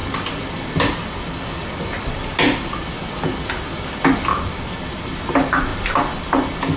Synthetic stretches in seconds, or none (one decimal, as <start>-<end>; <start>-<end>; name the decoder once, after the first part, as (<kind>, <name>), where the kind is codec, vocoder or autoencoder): none